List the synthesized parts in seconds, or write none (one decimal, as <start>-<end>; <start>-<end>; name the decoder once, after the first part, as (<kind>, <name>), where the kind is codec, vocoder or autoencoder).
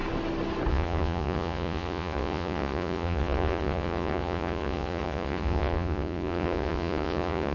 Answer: 0.7-7.5 (vocoder, Vocos)